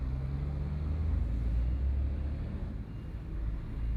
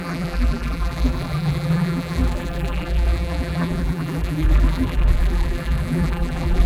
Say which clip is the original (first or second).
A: first